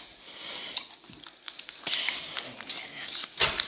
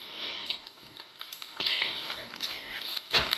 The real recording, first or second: first